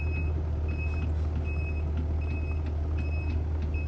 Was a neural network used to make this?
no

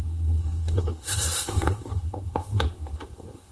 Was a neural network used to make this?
yes